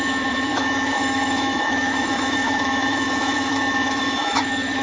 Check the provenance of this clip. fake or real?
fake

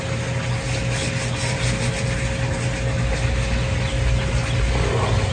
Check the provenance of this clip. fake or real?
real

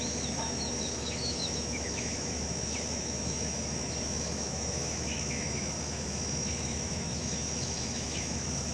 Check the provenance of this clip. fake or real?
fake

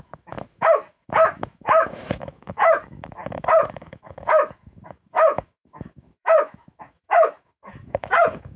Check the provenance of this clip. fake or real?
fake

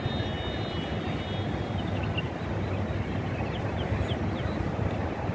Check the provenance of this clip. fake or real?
real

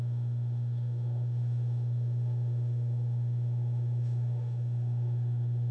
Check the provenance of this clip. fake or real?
fake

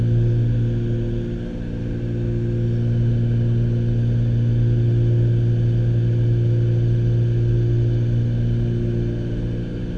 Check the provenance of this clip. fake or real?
real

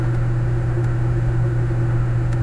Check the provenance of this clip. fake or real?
fake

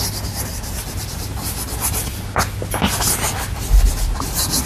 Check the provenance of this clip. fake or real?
real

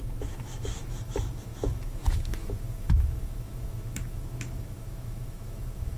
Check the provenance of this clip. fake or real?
fake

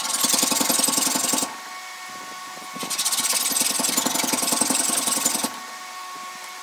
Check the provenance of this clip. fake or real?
real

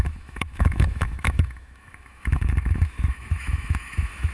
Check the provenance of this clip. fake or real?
fake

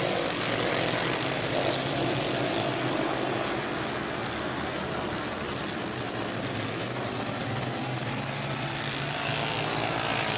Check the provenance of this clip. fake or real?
real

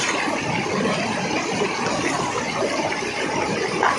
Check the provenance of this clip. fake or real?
real